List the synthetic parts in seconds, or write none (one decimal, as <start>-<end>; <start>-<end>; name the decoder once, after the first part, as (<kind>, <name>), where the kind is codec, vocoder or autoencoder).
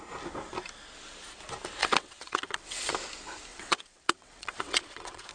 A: 1.8-2.9 (vocoder, WaveNeXt); 3.5-5.3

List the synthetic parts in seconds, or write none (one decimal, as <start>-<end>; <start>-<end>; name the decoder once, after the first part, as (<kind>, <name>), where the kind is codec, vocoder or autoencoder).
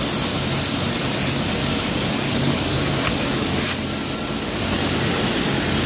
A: 1.6-3.6 (codec, DAC)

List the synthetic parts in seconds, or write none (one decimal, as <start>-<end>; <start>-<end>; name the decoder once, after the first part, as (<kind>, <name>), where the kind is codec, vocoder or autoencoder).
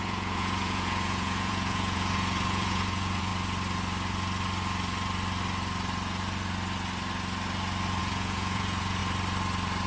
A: 0.0-3.3 (vocoder, Vocos); 8.0-9.0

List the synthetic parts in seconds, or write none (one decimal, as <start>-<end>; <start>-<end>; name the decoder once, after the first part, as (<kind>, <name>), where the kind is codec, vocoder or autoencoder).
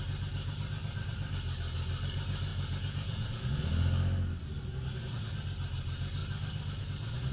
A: 2.5-3.6 (vocoder, Vocos)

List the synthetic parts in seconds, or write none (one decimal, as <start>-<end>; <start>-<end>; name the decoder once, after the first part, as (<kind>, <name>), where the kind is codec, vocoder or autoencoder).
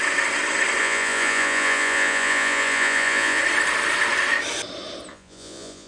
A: 0.8-3.4 (vocoder, Vocos); 5.1-5.9